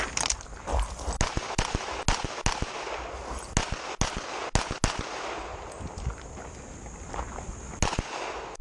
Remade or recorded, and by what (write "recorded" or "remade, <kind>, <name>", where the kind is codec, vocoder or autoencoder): recorded